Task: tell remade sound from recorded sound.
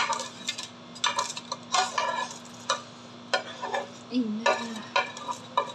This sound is recorded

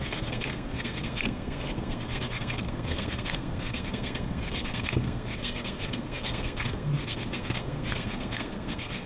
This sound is remade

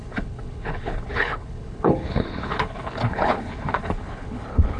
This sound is remade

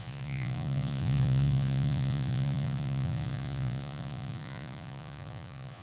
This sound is remade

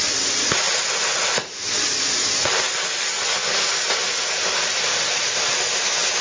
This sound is recorded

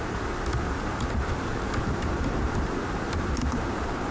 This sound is remade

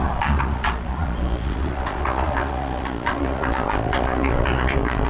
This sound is remade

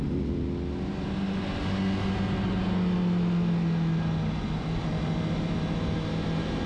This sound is recorded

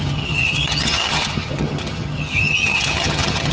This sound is remade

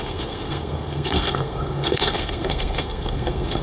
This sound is remade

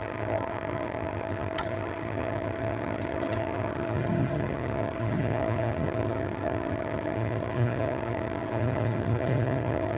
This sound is remade